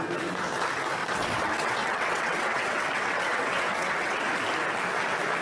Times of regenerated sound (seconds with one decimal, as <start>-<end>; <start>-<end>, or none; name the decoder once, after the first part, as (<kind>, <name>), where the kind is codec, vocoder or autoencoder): 1.0-4.2 (vocoder, WaveNeXt)